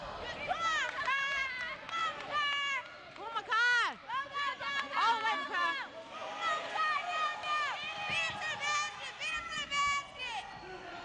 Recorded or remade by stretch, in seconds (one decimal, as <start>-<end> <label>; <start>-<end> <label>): 0.0-11.0 recorded